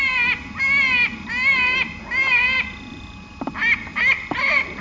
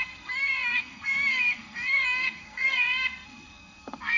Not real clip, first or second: second